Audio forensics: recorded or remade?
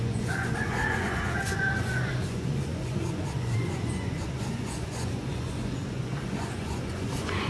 remade